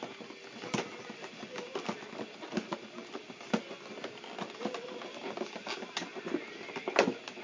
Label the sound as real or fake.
real